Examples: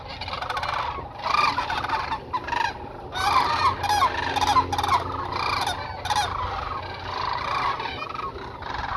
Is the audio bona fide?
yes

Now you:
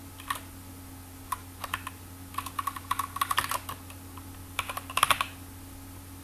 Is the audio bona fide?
yes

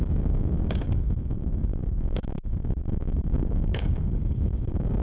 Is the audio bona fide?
no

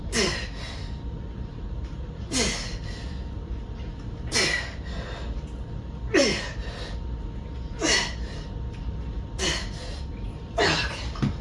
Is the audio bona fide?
yes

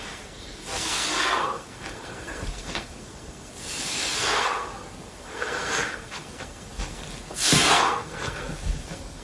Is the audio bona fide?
no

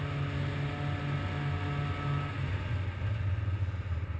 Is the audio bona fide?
yes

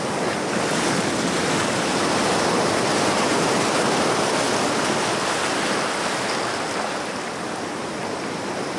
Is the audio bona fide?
yes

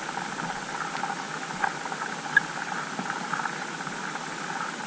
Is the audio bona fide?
yes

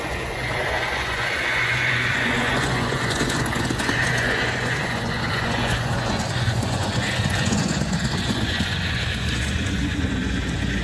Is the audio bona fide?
no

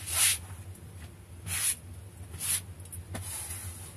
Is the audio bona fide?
yes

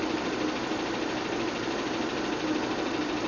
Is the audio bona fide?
no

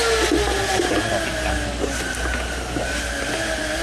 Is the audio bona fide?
yes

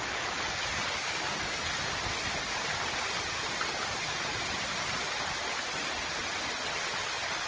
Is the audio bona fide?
yes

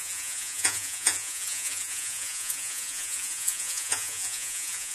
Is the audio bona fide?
no